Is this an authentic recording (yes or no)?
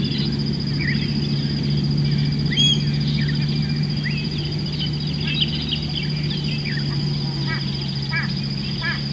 yes